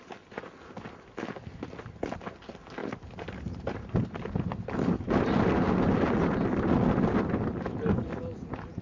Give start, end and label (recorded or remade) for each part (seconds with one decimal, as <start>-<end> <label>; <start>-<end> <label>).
0.0-2.8 recorded; 2.8-4.5 remade; 4.5-8.8 recorded